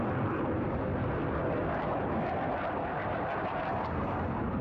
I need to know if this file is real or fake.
real